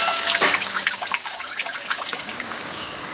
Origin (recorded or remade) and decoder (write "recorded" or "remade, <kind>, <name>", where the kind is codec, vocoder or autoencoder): remade, codec, DAC